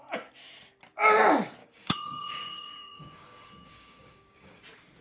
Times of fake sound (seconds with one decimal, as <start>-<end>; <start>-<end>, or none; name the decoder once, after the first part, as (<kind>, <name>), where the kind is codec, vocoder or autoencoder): 1.6-4.6 (codec, DAC)